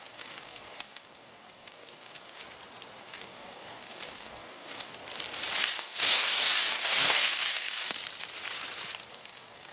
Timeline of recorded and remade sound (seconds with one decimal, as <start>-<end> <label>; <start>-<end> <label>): 0.0-2.4 remade; 2.4-3.0 recorded; 3.0-5.0 remade; 5.0-5.6 recorded; 5.6-8.0 remade; 8.0-9.1 recorded; 9.1-9.7 remade

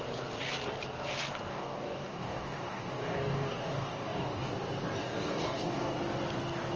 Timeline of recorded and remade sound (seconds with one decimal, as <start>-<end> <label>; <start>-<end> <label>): 0.0-1.5 recorded; 1.5-4.5 remade; 4.5-5.0 recorded; 5.0-5.9 remade; 5.9-6.8 recorded

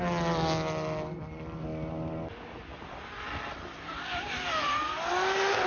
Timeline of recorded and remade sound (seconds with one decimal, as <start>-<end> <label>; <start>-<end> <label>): 0.0-5.7 recorded